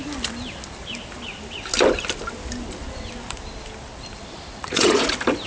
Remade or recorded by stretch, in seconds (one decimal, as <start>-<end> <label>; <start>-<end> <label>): 0.0-4.6 recorded; 4.6-5.1 remade; 5.1-5.5 recorded